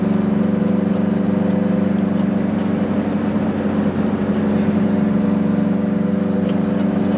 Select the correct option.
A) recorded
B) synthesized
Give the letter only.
A